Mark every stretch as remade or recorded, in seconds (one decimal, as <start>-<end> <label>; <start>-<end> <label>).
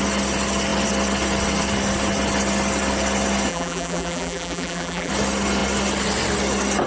0.0-3.5 recorded; 3.5-5.1 remade; 5.1-6.9 recorded